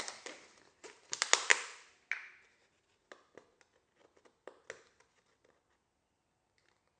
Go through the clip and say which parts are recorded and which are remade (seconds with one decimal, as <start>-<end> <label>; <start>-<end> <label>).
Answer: 0.0-7.0 recorded